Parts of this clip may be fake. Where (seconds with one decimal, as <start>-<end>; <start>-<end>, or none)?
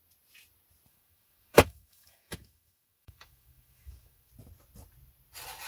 0.9-4.3